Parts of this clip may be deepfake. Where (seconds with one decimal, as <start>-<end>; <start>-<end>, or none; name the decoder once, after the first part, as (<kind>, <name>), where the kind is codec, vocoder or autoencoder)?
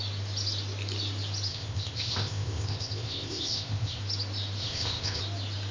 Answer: 1.5-4.0 (codec, ZipCodec); 4.6-5.2